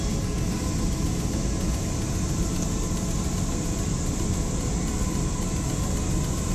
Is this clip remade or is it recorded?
recorded